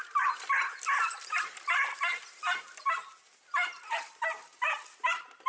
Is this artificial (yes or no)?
no